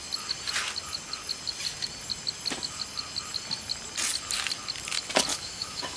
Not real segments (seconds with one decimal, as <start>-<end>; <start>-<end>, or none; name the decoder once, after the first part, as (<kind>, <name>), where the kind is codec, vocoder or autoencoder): 5.3-6.0 (autoencoder, DAC-VAE)